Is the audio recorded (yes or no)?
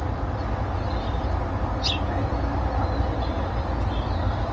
yes